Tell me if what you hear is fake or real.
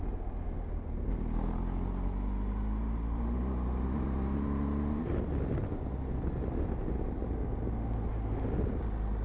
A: real